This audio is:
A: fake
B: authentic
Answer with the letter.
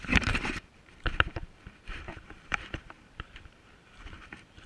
A